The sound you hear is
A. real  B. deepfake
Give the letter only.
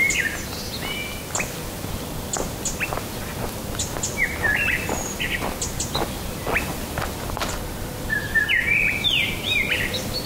A